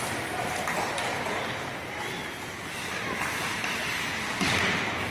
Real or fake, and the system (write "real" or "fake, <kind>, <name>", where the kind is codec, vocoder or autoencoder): real